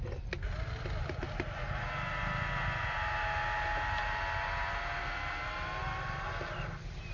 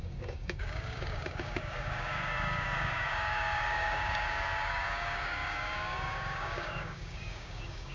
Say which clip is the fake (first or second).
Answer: second